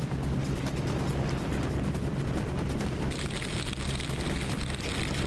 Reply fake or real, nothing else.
real